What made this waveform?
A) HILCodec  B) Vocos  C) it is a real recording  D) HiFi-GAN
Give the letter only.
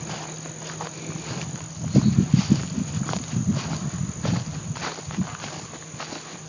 C